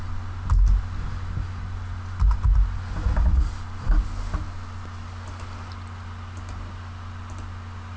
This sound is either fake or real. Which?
real